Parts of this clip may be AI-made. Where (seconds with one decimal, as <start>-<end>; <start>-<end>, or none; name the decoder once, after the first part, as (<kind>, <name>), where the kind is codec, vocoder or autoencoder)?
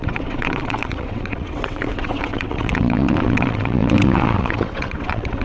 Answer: 0.0-5.4 (vocoder, WaveNeXt)